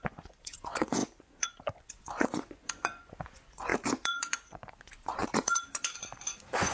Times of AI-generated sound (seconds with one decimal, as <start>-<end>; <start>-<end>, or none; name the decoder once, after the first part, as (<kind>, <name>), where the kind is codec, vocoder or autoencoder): 0.0-6.7 (vocoder, Vocos)